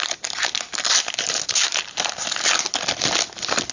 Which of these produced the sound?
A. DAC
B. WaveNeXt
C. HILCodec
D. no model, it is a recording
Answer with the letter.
D